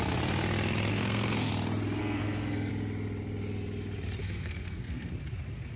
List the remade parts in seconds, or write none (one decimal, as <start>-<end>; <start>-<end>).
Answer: 0.9-1.5; 2.0-2.7; 4.2-5.1